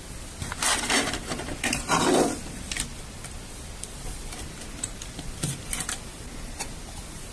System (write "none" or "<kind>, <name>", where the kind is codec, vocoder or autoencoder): vocoder, BigVGAN v2